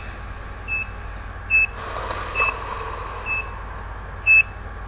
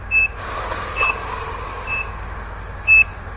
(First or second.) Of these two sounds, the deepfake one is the second